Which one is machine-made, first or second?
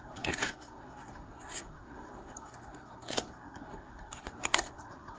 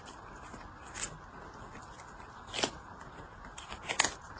first